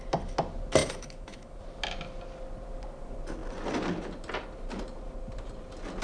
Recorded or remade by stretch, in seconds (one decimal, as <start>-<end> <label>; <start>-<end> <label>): 0.0-0.8 recorded; 0.8-1.6 remade; 1.6-6.0 recorded